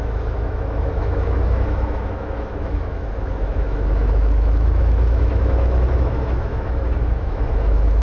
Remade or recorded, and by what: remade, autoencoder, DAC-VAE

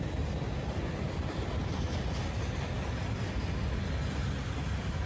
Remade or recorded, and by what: recorded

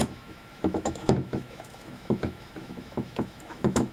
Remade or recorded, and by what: remade, autoencoder, DAC-VAE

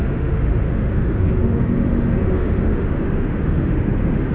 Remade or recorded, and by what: remade, autoencoder, DAC-VAE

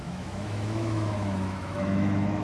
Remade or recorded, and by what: remade, autoencoder, DAC-VAE